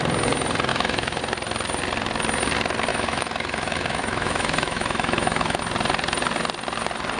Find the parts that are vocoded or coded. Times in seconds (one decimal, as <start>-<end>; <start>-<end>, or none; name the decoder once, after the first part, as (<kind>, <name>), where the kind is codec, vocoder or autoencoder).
0.7-1.2 (autoencoder, DAC-VAE); 2.9-5.6